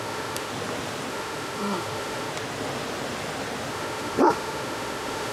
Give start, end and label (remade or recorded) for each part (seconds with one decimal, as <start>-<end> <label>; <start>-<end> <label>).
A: 0.0-0.5 remade; 0.5-1.1 recorded; 1.1-2.3 remade; 2.3-3.7 recorded; 3.7-5.3 remade